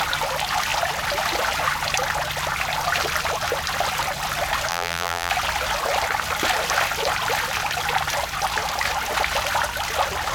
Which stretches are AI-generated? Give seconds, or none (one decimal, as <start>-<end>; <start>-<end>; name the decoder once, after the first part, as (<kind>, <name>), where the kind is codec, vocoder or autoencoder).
4.7-5.3 (vocoder, BigVGAN v2)